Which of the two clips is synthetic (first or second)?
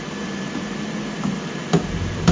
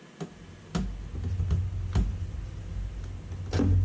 first